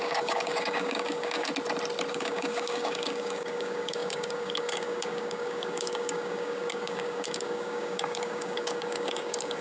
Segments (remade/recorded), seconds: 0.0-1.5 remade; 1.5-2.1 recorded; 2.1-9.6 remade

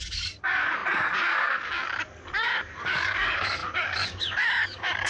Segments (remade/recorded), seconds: 0.0-5.1 remade

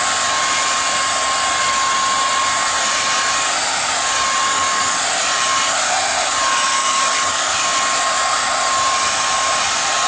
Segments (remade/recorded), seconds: 0.0-4.5 recorded; 4.5-5.0 remade; 5.0-6.8 recorded; 6.8-7.6 remade; 7.6-10.1 recorded

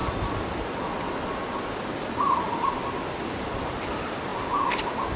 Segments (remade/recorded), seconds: 0.0-5.2 recorded

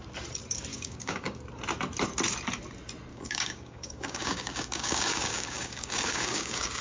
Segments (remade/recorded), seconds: 0.0-0.7 recorded; 0.7-1.4 remade; 1.4-3.1 recorded; 3.1-6.8 remade

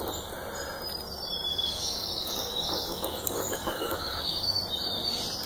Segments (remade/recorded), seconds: 0.0-1.5 recorded; 1.5-4.6 remade; 4.6-5.5 recorded

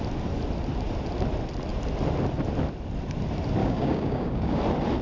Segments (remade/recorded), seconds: 0.0-3.6 recorded; 3.6-4.6 remade; 4.6-5.0 recorded